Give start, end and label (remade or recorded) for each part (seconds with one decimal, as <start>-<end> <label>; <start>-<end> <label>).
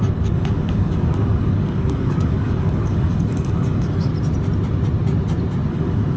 0.0-4.1 remade; 4.1-5.7 recorded; 5.7-6.2 remade